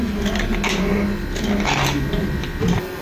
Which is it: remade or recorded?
recorded